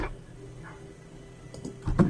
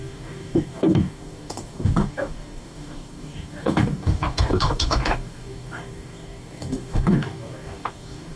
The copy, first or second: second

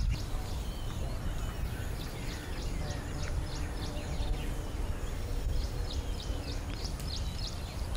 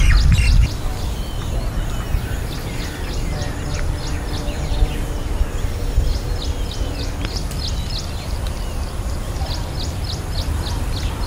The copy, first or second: first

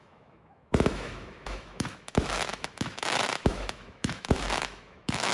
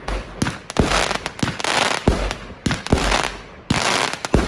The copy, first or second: first